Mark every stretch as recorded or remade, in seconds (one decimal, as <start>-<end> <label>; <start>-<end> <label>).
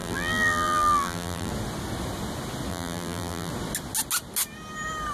0.0-1.5 remade; 1.5-2.7 recorded; 2.7-3.5 remade; 3.5-5.1 recorded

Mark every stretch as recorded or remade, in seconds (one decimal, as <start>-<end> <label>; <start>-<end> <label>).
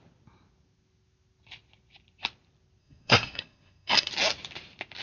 0.0-2.8 recorded; 2.8-4.1 remade; 4.1-5.0 recorded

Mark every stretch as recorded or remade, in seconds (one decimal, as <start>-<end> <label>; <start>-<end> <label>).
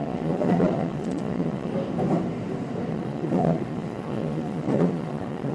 0.0-1.7 remade; 1.7-2.9 recorded; 2.9-5.5 remade